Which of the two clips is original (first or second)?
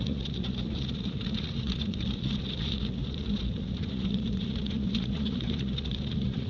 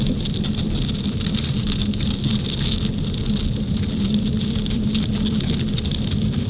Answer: second